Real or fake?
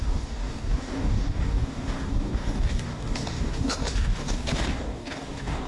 fake